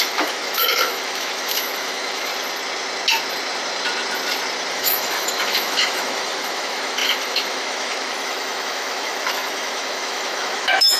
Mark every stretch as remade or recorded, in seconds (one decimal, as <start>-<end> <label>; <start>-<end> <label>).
0.0-2.3 remade; 2.3-4.7 recorded; 4.7-11.0 remade

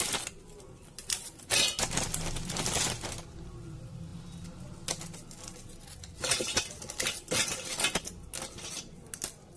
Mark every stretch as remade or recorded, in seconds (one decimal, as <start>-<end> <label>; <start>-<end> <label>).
0.0-9.6 recorded

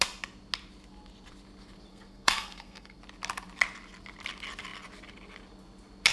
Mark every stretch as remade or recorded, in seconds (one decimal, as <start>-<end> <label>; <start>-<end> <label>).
0.0-1.9 recorded; 1.9-3.0 remade; 3.0-6.1 recorded

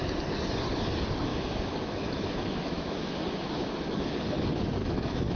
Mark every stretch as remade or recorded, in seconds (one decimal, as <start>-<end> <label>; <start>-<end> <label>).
0.0-1.3 recorded; 1.3-4.1 remade; 4.1-4.8 recorded; 4.8-5.4 remade

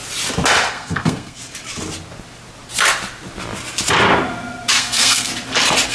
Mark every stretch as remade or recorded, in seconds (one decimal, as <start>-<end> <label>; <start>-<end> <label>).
0.0-0.7 recorded; 0.7-1.4 remade; 1.4-4.8 recorded; 4.8-5.3 remade; 5.3-5.9 recorded

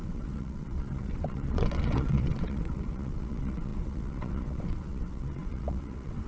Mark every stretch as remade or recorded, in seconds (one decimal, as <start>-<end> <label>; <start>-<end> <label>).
0.0-6.3 remade

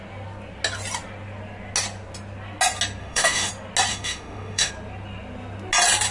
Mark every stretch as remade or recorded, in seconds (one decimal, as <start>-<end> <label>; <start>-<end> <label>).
0.0-3.0 recorded; 3.0-3.5 remade; 3.5-3.9 recorded; 3.9-4.7 remade; 4.7-6.1 recorded